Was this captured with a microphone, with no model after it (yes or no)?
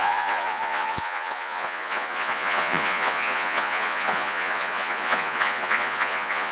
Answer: no